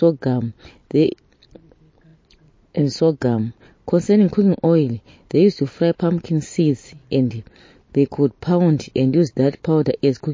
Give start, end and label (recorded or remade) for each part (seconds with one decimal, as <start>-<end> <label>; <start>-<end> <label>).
0.0-2.1 recorded; 2.1-3.6 remade; 3.6-10.3 recorded